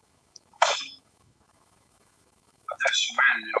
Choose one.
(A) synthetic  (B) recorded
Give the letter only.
A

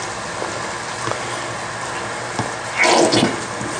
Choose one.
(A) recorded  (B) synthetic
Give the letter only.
A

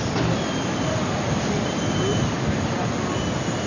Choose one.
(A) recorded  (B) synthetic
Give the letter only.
A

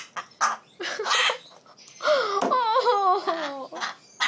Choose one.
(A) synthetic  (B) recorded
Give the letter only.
B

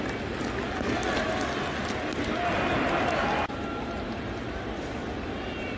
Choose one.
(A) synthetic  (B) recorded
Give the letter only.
B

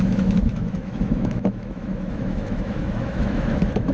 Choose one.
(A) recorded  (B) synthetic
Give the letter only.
B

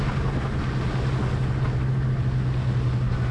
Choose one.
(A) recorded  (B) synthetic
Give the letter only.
A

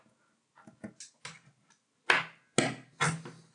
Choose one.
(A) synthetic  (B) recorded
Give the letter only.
B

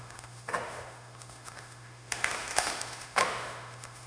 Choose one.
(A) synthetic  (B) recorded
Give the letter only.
A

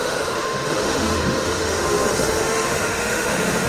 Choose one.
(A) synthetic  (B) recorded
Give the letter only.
A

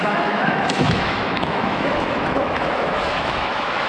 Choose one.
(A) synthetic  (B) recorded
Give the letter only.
A